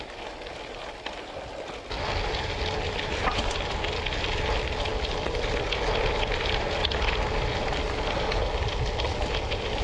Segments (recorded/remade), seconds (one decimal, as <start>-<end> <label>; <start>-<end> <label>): 0.0-9.8 recorded